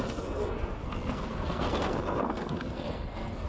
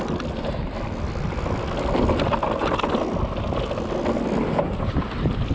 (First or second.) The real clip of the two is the second